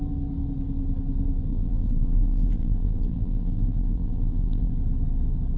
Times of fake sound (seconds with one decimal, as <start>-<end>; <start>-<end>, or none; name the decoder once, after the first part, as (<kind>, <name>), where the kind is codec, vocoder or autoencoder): 1.5-4.7 (vocoder, BigVGAN v2)